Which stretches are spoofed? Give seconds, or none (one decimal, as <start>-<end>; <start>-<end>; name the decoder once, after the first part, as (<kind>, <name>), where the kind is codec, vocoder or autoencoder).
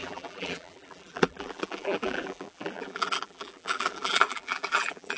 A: 0.0-5.2 (vocoder, BigVGAN v2)